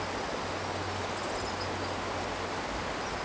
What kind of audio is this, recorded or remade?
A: recorded